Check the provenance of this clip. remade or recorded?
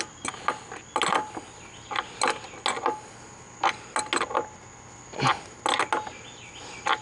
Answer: recorded